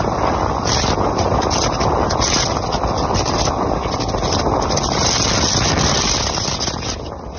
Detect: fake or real real